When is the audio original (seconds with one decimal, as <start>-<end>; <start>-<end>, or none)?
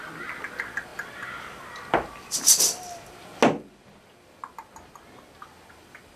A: 0.0-6.2